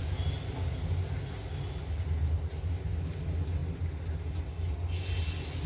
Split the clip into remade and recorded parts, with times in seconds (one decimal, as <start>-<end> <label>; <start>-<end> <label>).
0.0-5.7 recorded